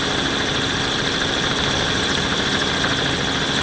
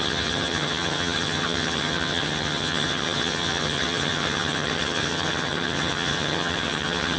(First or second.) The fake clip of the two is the second